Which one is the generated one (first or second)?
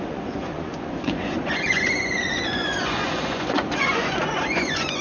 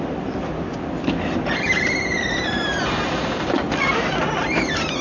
first